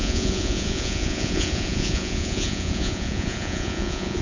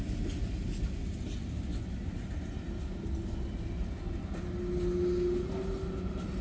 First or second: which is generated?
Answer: first